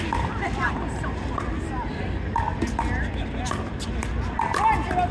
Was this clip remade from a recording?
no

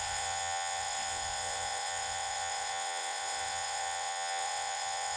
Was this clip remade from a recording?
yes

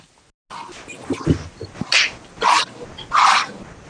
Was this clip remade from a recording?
no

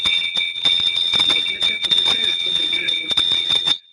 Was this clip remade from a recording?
yes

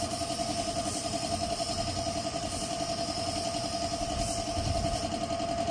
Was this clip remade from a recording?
no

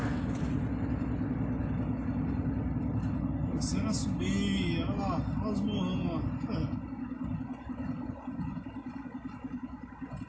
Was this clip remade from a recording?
no